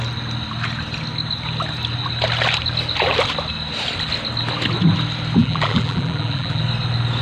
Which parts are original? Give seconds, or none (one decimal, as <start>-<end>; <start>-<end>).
0.0-5.4; 6.6-7.2